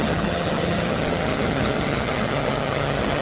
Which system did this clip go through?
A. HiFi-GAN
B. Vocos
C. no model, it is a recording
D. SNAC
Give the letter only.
A